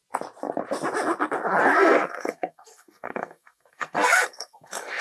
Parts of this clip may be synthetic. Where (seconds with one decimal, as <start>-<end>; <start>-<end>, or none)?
1.8-5.0